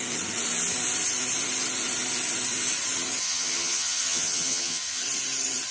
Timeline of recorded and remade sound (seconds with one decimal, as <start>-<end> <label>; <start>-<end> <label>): 0.0-3.2 recorded; 3.2-5.0 remade; 5.0-5.7 recorded